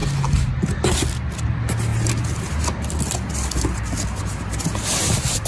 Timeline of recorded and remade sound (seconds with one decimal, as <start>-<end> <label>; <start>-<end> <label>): 0.0-5.5 recorded